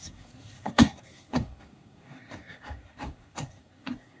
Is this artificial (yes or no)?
yes